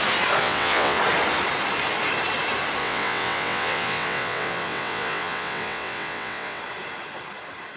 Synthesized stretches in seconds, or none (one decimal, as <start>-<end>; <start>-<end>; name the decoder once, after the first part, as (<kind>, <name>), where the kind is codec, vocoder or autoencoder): 0.4-1.0 (vocoder, WaveNeXt); 2.8-6.6